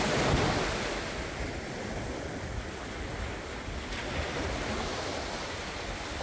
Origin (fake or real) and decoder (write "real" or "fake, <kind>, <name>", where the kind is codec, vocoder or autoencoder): real